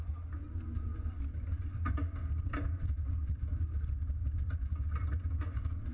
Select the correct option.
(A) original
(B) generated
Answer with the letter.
A